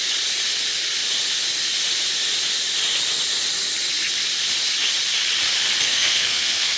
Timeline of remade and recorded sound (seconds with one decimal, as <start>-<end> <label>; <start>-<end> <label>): 0.0-5.8 recorded; 5.8-6.8 remade